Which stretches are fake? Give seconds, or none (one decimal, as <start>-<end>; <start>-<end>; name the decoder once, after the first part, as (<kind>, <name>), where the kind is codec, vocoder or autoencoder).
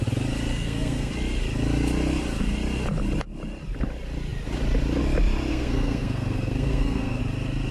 0.5-1.1 (codec, SNAC); 5.5-7.2